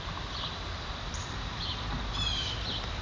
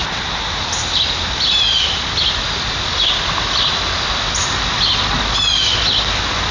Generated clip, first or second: first